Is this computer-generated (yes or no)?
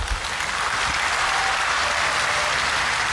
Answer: no